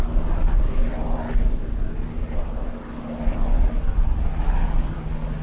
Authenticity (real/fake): real